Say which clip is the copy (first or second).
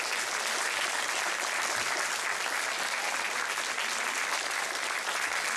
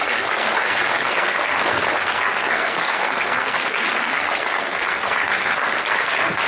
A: second